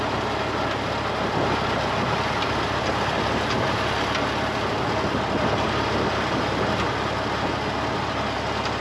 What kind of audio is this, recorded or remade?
recorded